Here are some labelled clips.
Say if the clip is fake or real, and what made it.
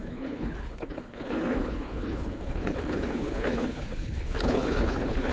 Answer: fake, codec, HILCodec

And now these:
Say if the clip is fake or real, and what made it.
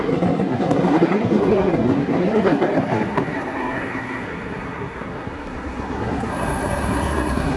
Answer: fake, codec, SNAC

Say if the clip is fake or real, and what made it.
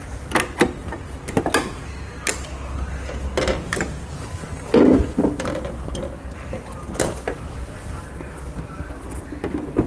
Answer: real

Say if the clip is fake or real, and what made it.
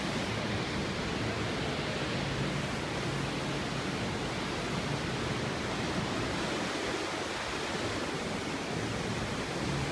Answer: real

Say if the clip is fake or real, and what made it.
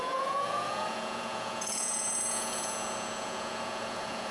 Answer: fake, vocoder, Vocos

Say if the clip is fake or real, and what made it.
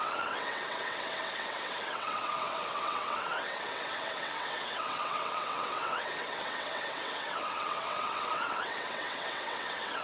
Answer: fake, vocoder, WaveNeXt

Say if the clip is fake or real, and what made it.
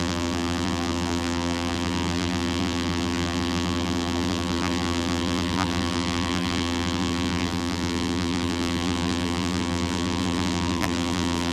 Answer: fake, vocoder, BigVGAN v2